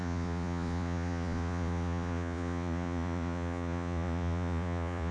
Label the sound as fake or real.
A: fake